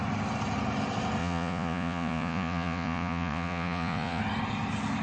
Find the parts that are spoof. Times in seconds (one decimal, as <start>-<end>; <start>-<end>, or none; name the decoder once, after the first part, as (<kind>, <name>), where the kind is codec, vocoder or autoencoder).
1.2-4.2 (vocoder, Vocos)